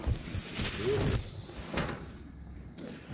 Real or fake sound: fake